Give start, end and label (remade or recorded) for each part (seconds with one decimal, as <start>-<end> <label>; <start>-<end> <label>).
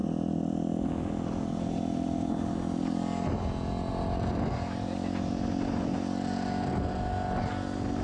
0.0-8.0 recorded